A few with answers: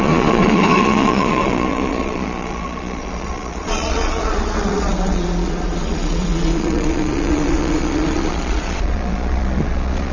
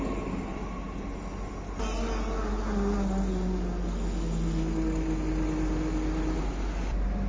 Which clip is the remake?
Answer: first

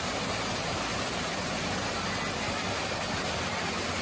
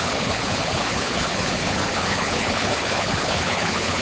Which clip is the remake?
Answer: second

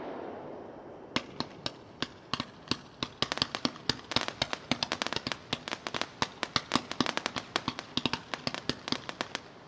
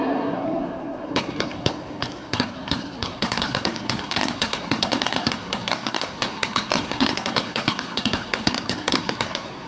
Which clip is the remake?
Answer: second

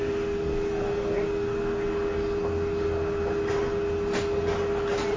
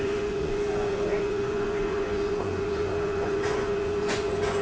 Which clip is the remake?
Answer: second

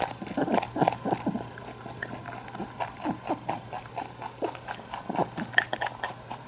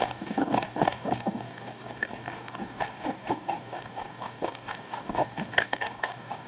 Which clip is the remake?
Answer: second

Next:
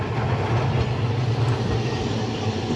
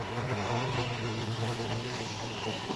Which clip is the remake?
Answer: second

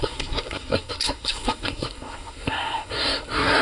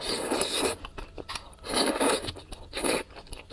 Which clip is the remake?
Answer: first